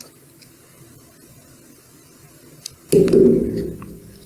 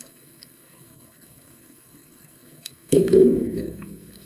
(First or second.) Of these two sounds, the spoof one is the second